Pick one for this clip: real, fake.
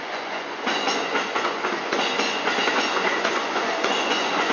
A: fake